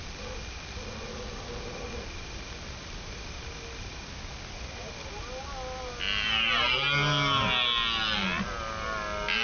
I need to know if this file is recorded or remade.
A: recorded